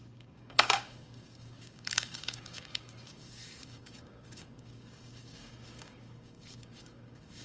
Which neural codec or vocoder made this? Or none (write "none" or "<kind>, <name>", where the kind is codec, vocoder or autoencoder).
codec, DAC